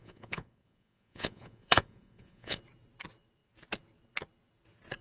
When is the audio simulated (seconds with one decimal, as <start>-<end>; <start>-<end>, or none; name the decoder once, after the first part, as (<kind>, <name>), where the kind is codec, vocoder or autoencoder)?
0.0-2.6 (vocoder, Vocos)